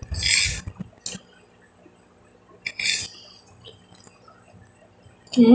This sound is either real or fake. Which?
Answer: real